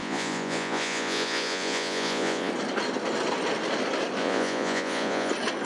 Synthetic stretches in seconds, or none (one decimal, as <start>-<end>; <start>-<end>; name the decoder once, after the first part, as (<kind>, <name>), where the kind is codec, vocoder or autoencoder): 0.0-2.5 (vocoder, Vocos); 4.2-5.3